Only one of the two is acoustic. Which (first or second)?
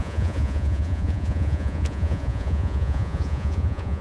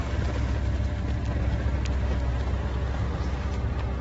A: second